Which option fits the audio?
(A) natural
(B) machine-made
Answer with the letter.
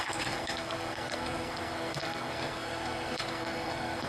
B